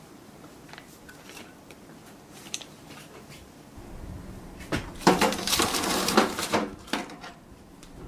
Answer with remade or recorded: remade